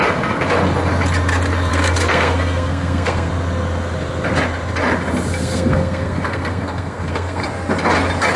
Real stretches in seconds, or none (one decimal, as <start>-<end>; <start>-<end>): 0.0-1.7; 3.3-5.4; 7.4-8.4